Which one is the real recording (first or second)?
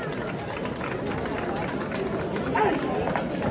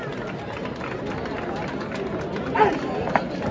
second